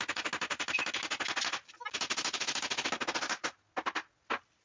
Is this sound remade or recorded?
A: recorded